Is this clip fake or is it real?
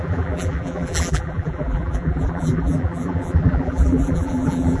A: fake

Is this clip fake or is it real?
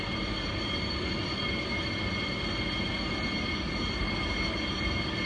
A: real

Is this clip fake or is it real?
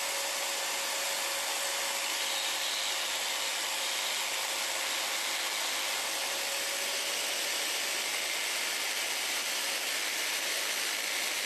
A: real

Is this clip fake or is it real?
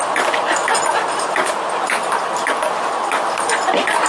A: real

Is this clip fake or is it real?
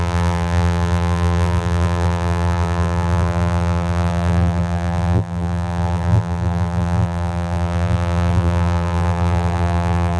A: fake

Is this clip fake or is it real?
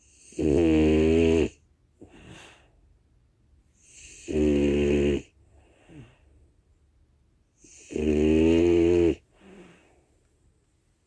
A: real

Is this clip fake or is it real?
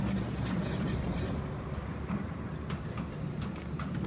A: real